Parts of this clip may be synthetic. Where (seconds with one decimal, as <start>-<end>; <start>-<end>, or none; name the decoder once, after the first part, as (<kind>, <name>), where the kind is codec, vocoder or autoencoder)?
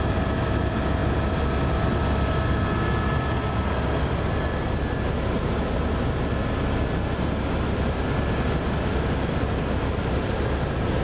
none